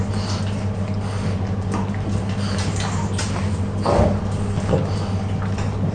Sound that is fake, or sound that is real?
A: real